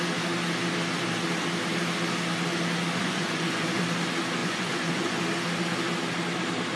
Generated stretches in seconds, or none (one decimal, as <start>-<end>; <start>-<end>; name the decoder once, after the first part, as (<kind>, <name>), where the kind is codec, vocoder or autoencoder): 3.0-3.8 (vocoder, Vocos); 4.4-5.2